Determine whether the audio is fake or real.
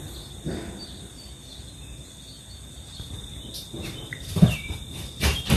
real